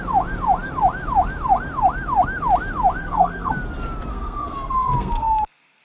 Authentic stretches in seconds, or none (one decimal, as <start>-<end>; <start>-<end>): 0.0-3.0; 3.5-4.1